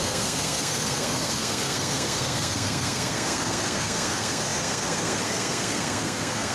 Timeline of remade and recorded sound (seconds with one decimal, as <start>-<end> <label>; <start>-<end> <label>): 0.0-6.5 remade